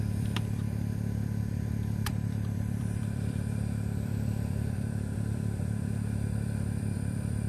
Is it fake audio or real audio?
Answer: fake